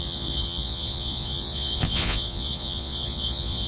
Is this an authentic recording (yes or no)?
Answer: no